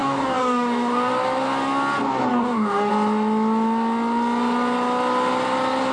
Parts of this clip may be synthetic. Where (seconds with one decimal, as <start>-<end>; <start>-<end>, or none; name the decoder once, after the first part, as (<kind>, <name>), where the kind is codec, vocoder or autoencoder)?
0.0-1.1 (codec, DAC); 2.3-2.9